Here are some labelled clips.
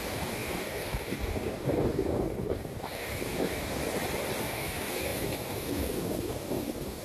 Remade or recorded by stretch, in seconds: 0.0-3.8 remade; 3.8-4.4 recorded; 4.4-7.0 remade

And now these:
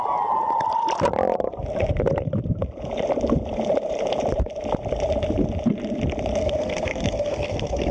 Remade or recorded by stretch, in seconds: 0.0-6.4 recorded; 6.4-7.9 remade

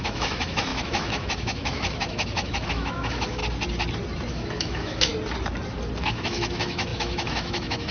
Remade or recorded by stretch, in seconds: 0.0-3.4 remade; 3.4-4.3 recorded; 4.3-5.1 remade; 5.1-6.0 recorded; 6.0-7.9 remade

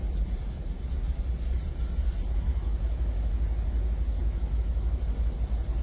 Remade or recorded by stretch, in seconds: 0.0-2.5 recorded; 2.5-3.3 remade; 3.3-4.2 recorded; 4.2-5.0 remade; 5.0-5.8 recorded

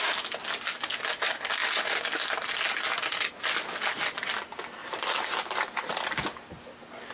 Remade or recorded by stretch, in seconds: 0.0-4.8 recorded; 4.8-6.0 remade; 6.0-7.1 recorded